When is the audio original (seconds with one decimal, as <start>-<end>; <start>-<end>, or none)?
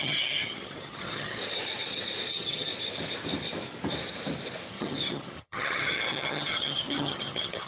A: 1.4-2.3; 2.7-4.7